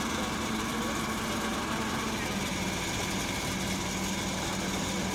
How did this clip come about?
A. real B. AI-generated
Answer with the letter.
A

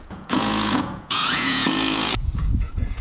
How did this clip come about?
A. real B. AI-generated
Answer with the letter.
B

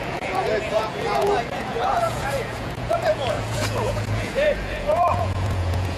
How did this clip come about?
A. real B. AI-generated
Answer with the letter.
B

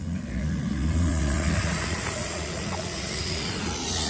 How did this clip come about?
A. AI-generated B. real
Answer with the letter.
A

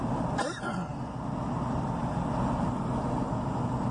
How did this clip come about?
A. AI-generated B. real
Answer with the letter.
B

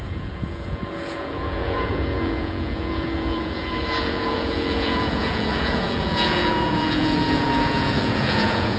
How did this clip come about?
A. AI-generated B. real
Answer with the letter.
A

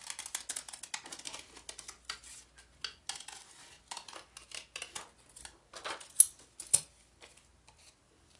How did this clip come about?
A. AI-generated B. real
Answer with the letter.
B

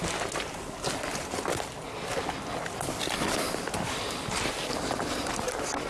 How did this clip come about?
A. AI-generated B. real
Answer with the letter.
B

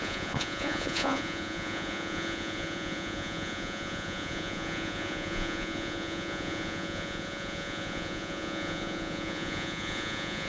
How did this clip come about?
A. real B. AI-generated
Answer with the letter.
B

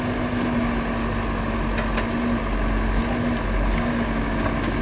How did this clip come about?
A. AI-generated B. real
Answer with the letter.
B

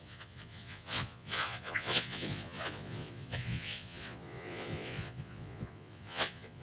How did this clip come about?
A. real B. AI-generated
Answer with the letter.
B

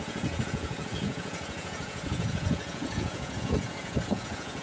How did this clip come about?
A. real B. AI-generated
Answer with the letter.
B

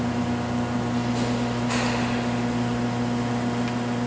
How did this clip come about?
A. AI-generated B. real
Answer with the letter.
B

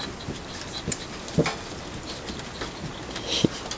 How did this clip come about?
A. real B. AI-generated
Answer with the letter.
A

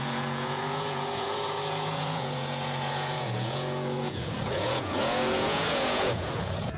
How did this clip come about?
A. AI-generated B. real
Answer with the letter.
A